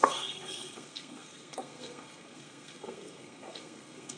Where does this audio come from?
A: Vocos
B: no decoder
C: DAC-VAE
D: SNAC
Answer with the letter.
D